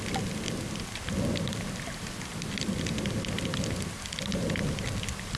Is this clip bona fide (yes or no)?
yes